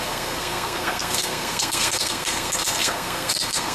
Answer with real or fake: fake